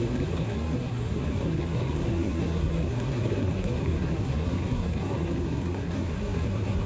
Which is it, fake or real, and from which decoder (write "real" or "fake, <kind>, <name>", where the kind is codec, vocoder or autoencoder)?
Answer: fake, codec, SNAC